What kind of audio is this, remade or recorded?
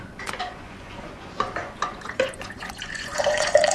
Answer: remade